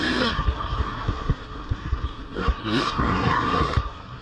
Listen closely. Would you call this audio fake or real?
fake